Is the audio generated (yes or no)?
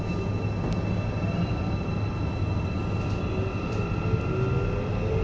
no